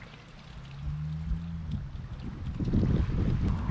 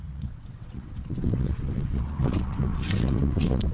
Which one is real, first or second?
first